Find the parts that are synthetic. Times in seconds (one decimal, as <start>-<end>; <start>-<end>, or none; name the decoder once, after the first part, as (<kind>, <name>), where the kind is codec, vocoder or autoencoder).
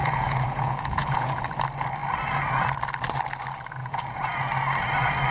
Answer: 0.0-1.4 (vocoder, Vocos); 3.8-4.3